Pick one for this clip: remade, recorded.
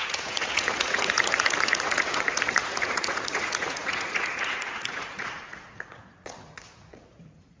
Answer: remade